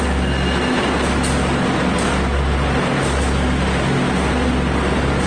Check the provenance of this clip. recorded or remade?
recorded